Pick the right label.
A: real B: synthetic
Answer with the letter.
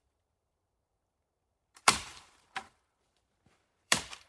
B